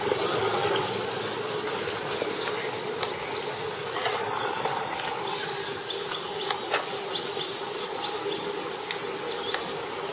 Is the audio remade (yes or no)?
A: no